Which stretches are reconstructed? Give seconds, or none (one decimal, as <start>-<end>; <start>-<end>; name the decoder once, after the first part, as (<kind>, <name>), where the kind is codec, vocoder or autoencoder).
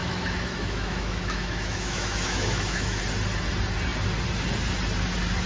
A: 0.0-3.0 (autoencoder, DAC-VAE)